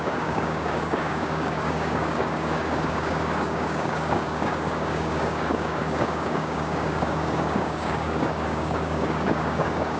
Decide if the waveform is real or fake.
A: fake